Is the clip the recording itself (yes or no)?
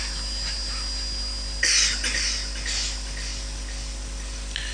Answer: yes